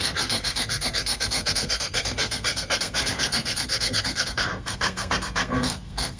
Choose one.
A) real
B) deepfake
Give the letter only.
B